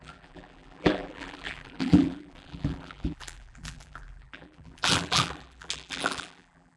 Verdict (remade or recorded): remade